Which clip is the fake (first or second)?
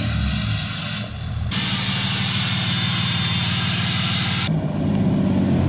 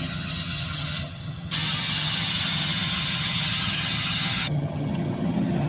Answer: second